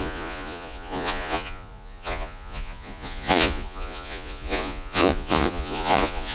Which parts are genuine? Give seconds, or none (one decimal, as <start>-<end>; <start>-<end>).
none